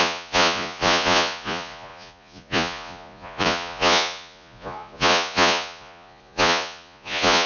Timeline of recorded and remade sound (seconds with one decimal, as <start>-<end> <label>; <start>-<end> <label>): 0.0-7.5 remade